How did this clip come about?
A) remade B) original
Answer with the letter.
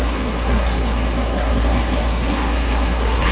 A